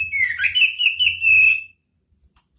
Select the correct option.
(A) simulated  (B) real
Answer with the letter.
B